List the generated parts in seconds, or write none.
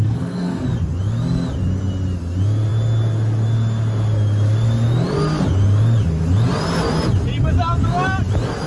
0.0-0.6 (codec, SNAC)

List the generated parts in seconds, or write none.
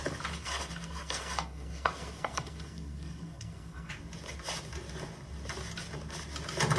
0.4-3.9 (codec, SNAC)